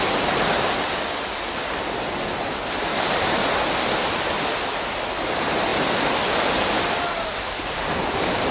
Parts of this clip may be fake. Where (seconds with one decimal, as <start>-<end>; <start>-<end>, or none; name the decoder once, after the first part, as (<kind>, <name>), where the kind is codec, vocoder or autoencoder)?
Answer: none